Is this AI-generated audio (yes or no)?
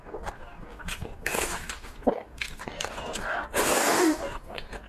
yes